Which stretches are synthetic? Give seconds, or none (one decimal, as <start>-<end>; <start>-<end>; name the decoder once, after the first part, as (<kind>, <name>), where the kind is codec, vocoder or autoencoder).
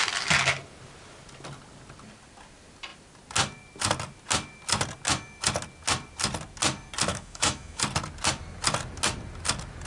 7.1-7.8 (autoencoder, DAC-VAE)